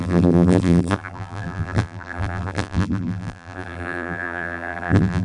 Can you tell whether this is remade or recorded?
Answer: remade